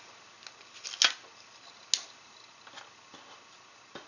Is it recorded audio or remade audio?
recorded